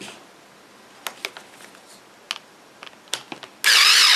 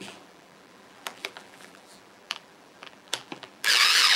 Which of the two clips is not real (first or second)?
second